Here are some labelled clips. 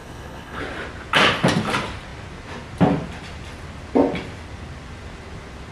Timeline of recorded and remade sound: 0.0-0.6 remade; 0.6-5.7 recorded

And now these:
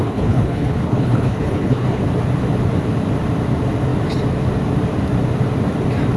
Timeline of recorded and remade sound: 0.0-2.0 remade; 2.0-6.2 recorded

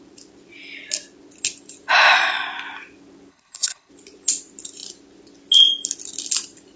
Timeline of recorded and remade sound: 0.0-3.3 recorded; 3.3-3.9 remade; 3.9-6.8 recorded

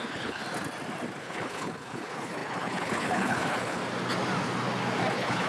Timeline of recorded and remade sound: 0.0-0.4 remade; 0.4-1.2 recorded; 1.2-3.8 remade; 3.8-5.1 recorded; 5.1-5.5 remade

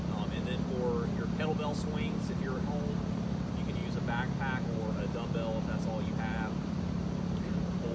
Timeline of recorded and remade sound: 0.0-7.9 recorded

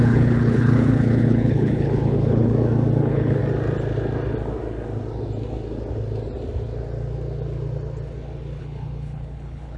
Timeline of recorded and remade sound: 0.0-2.5 remade; 2.5-3.0 recorded; 3.0-3.4 remade; 3.4-8.6 recorded; 8.6-9.8 remade